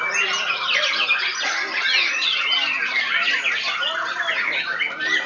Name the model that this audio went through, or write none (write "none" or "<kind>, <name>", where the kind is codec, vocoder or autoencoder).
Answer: none